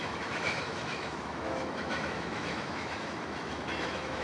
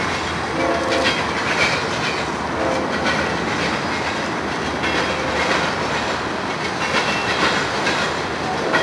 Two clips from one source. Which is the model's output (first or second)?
first